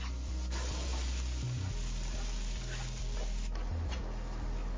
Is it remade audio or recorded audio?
recorded